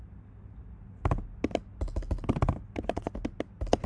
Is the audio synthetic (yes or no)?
no